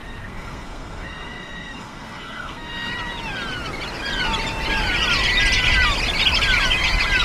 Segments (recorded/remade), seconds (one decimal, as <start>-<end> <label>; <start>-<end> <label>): 0.0-2.9 remade; 2.9-7.2 recorded